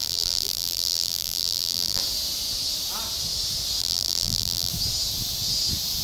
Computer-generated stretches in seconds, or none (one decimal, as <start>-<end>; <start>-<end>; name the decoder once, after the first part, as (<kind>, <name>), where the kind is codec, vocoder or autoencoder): 0.0-2.0 (vocoder, BigVGAN v2); 3.8-4.7